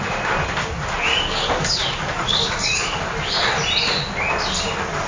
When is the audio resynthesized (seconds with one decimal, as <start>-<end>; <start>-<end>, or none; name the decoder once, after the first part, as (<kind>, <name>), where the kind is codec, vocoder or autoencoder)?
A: 1.1-3.0 (codec, DAC)